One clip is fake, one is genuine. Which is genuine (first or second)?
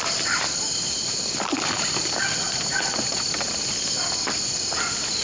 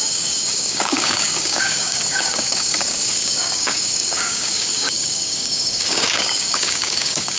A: first